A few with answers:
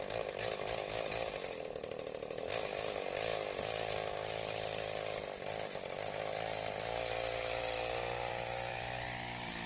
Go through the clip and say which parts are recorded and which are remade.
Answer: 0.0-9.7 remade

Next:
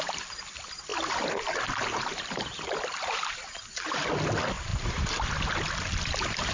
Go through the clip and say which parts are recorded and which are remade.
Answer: 0.0-6.5 remade

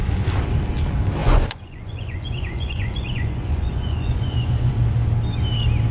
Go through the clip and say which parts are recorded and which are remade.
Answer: 0.0-1.2 recorded; 1.2-4.7 remade; 4.7-5.9 recorded

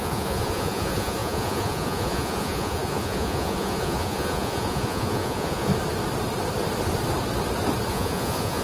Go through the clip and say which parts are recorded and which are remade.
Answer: 0.0-5.7 remade; 5.7-7.9 recorded; 7.9-8.6 remade

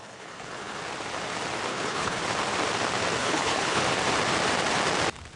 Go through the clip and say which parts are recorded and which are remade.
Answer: 0.0-0.8 remade; 0.8-1.7 recorded; 1.7-2.2 remade; 2.2-3.2 recorded; 3.2-3.8 remade; 3.8-5.4 recorded